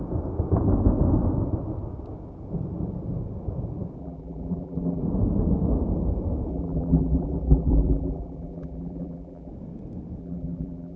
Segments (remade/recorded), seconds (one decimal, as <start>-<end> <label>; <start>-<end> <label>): 0.0-4.0 recorded; 4.0-5.0 remade; 5.0-6.5 recorded; 6.5-9.5 remade; 9.5-10.2 recorded; 10.2-11.0 remade